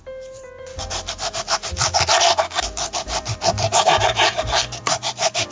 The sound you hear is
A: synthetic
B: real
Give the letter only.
A